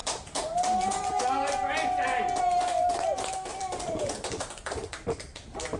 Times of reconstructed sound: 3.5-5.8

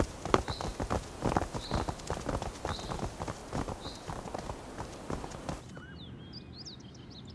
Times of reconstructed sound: none

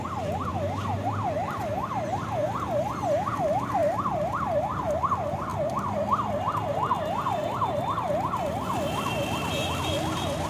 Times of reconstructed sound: 3.8-5.0